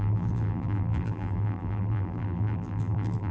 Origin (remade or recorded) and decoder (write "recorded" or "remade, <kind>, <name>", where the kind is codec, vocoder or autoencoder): remade, vocoder, BigVGAN v2